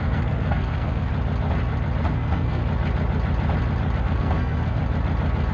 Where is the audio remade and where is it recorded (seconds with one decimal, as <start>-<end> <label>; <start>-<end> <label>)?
0.0-1.1 remade; 1.1-2.0 recorded; 2.0-2.6 remade; 2.6-4.0 recorded; 4.0-4.8 remade; 4.8-5.5 recorded